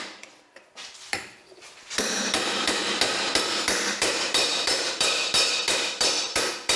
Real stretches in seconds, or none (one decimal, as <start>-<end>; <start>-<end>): 2.8-3.4